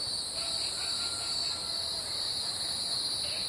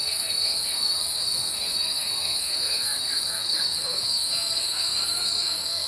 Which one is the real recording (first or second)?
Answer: first